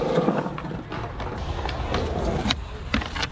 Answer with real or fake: real